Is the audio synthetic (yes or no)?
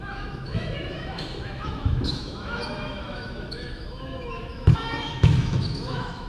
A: yes